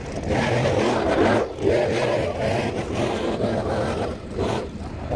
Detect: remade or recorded recorded